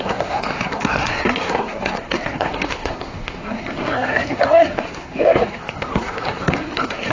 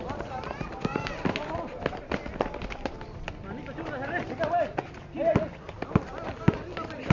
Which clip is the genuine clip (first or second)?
second